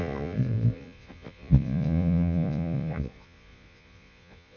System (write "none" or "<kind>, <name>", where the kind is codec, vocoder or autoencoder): vocoder, Vocos